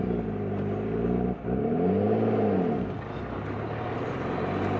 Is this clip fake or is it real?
real